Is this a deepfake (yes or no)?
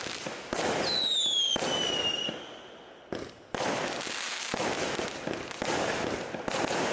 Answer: no